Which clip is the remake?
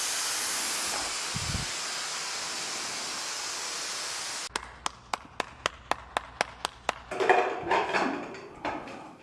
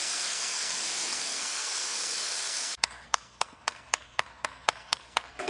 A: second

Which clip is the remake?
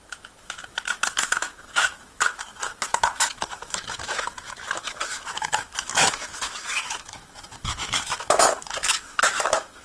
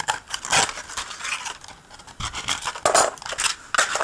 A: first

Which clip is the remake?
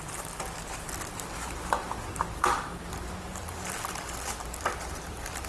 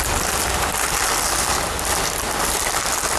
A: first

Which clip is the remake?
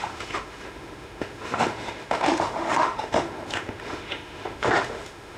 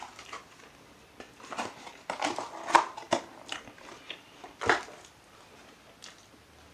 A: first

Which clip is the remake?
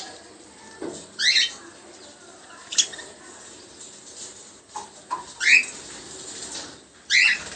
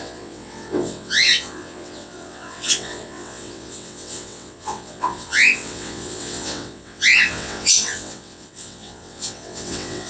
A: second